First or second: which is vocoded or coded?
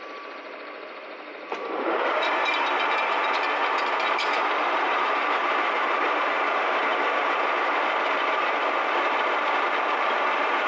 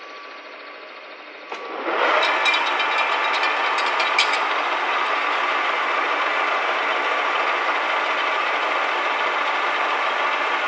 first